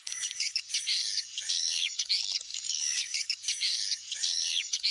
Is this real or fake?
fake